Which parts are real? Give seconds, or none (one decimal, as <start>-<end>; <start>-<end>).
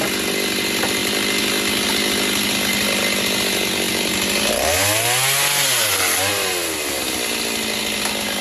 0.0-8.4